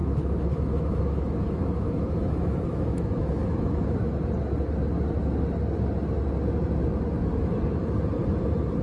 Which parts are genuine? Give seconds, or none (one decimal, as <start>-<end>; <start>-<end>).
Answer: 4.1-8.8